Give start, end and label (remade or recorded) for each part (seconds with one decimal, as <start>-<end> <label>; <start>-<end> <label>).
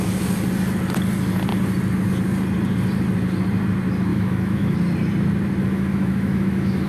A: 0.0-4.1 recorded; 4.1-4.8 remade; 4.8-5.6 recorded; 5.6-6.9 remade